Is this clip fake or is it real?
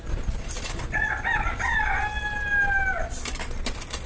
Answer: real